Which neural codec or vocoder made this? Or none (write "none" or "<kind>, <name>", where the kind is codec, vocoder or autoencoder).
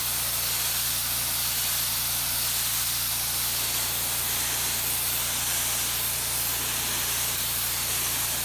none